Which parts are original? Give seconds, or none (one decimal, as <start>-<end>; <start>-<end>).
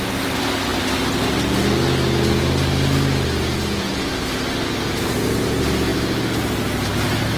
0.0-7.4